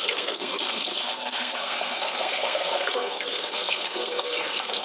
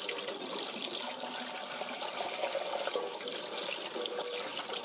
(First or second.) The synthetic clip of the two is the first